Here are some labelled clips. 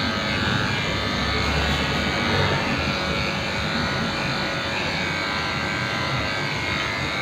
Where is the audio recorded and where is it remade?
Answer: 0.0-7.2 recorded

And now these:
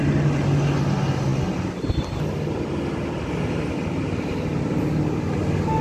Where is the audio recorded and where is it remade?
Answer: 0.0-5.8 recorded

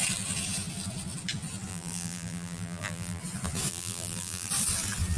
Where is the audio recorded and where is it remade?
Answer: 0.0-1.7 recorded; 1.7-3.2 remade; 3.2-3.7 recorded; 3.7-4.5 remade; 4.5-5.2 recorded

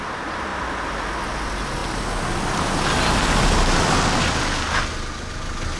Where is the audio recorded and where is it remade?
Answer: 0.0-5.8 recorded

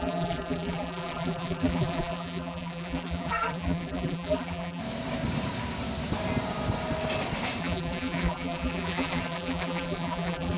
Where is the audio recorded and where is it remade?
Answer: 0.0-4.8 remade; 4.8-7.6 recorded; 7.6-10.6 remade

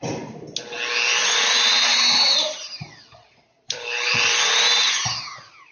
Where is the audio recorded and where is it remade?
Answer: 0.0-1.2 recorded; 1.2-4.6 remade; 4.6-5.7 recorded

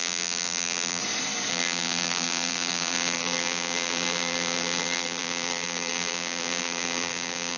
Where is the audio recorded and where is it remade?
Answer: 0.0-1.0 remade; 1.0-1.5 recorded; 1.5-7.6 remade

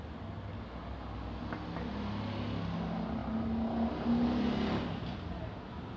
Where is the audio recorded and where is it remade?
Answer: 0.0-6.0 recorded